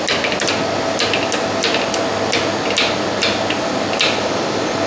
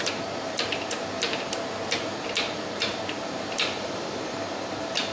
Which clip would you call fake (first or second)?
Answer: second